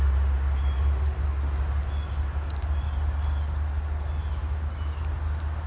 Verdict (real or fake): real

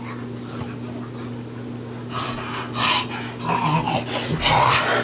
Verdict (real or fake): real